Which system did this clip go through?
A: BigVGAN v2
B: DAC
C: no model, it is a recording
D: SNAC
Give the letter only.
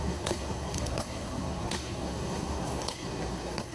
D